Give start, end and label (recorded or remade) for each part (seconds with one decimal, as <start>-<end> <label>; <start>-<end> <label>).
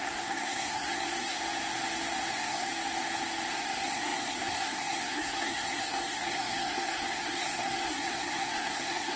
0.0-1.4 remade; 1.4-2.3 recorded; 2.3-2.7 remade; 2.7-3.5 recorded; 3.5-9.2 remade